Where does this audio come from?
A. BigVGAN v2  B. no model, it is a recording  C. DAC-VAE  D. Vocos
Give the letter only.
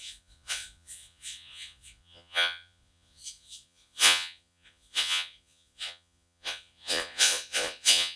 D